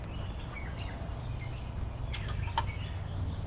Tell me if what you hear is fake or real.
real